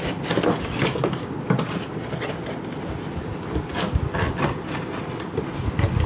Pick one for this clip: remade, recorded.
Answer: recorded